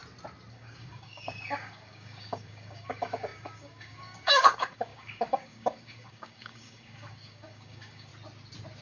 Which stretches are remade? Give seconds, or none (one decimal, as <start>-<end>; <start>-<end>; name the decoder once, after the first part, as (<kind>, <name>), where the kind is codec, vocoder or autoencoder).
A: 0.5-8.1 (codec, DAC)